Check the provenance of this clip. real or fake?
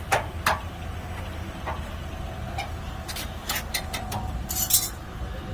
real